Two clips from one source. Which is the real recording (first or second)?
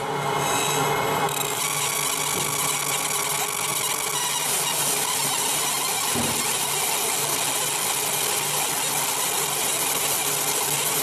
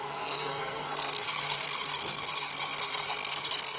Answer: first